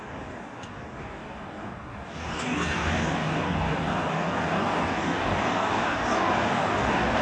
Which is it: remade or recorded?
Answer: remade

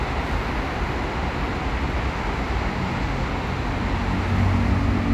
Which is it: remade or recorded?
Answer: recorded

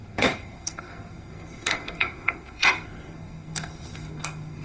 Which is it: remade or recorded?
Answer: remade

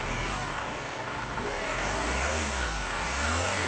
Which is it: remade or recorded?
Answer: remade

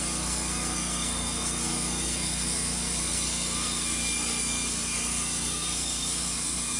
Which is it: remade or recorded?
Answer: remade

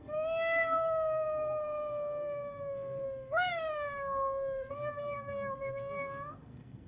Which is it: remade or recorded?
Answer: remade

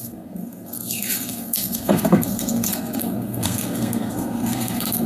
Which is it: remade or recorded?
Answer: remade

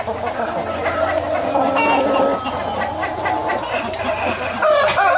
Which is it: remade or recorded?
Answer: recorded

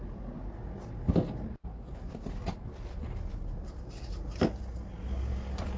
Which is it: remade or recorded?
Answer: recorded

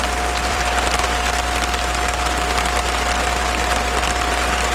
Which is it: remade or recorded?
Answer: remade